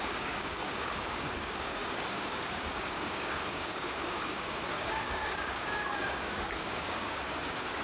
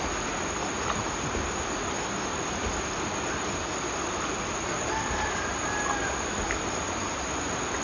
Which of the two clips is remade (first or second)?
first